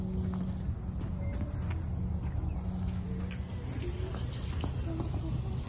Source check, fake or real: real